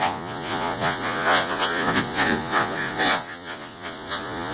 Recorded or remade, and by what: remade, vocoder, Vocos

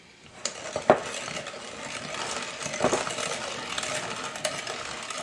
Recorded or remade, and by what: recorded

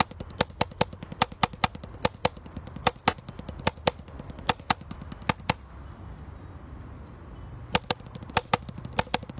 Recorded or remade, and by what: recorded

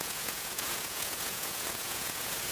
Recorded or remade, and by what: remade, vocoder, Vocos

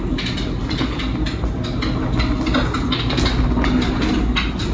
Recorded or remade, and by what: recorded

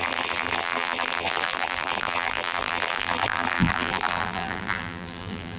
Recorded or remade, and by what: remade, vocoder, BigVGAN v2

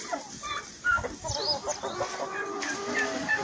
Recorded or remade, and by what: recorded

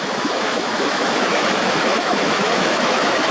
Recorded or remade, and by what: remade, autoencoder, DAC-VAE